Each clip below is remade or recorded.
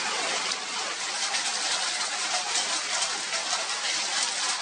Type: recorded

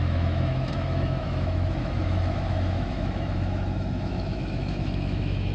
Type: remade